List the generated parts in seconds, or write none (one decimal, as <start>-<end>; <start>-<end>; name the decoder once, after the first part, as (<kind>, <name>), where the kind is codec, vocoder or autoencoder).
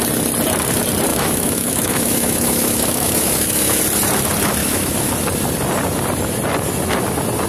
1.1-3.8 (autoencoder, DAC-VAE); 4.6-5.1